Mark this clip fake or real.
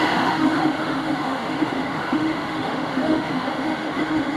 fake